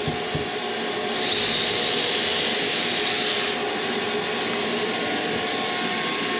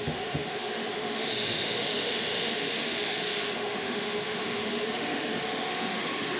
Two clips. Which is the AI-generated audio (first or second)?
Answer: second